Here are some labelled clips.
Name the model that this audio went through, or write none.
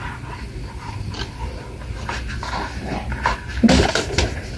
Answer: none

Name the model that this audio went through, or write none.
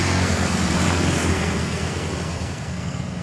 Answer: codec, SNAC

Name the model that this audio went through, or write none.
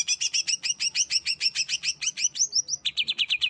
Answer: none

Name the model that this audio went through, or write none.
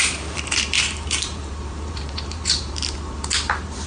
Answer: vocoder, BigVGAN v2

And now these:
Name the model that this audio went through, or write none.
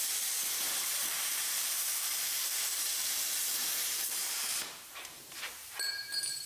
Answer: vocoder, BigVGAN v2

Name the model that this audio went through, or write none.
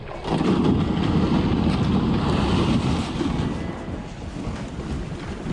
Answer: none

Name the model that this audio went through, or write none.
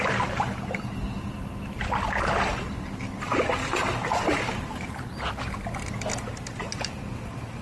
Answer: none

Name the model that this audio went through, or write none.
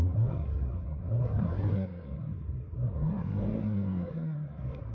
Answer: codec, SNAC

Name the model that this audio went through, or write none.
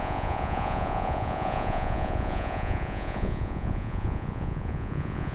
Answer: vocoder, Vocos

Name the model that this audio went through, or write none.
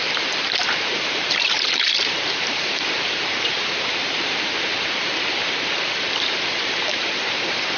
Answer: vocoder, BigVGAN v2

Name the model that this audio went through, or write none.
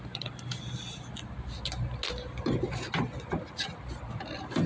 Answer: none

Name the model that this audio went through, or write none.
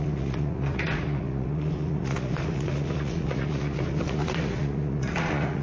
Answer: vocoder, Vocos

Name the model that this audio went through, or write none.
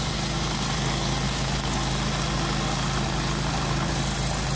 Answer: none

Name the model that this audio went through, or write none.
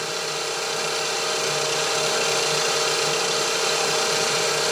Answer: none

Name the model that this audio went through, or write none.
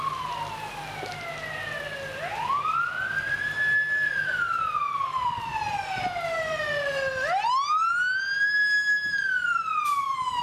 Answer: none